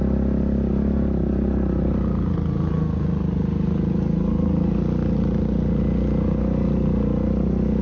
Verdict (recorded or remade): recorded